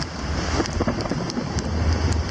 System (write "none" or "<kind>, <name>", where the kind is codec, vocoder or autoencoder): none